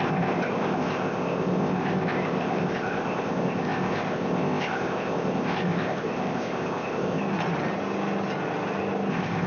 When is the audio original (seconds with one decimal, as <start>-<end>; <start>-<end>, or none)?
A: 7.2-9.1